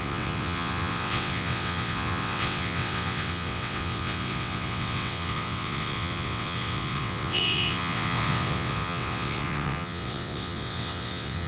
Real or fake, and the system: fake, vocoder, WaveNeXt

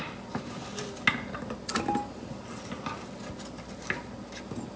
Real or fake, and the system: real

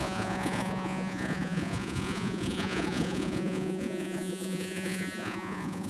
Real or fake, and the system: fake, vocoder, Vocos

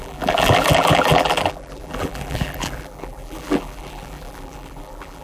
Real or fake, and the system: fake, vocoder, BigVGAN v2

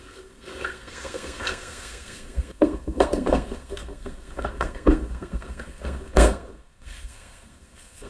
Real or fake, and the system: fake, codec, SNAC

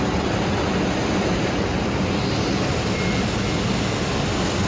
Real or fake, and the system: real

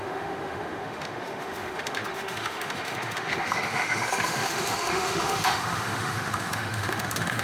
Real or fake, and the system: fake, autoencoder, DAC-VAE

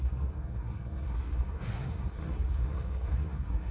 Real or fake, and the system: fake, codec, SNAC